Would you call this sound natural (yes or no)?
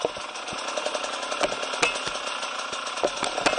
yes